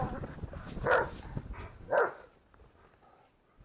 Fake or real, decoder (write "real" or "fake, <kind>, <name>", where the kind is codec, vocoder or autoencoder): real